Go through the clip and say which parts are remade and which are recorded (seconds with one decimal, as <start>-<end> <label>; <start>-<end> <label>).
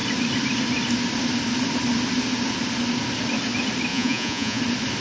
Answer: 0.0-3.9 recorded; 3.9-4.6 remade; 4.6-5.0 recorded